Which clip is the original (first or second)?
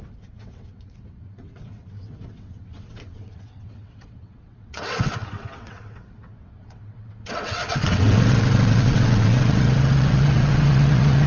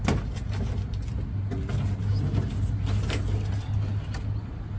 second